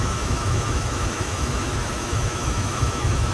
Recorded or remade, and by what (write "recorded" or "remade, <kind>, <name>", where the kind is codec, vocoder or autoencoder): remade, autoencoder, DAC-VAE